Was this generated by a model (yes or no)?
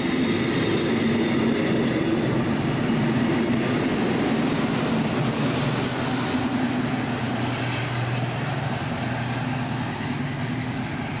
no